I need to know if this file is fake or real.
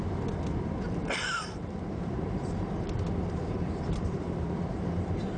fake